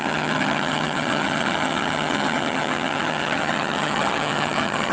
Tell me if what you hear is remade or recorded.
remade